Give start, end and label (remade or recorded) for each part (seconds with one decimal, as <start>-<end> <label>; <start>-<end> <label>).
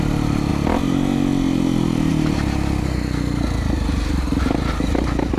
0.0-2.8 recorded; 2.8-3.4 remade; 3.4-5.4 recorded